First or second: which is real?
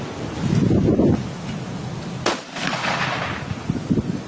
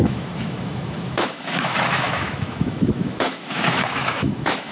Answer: first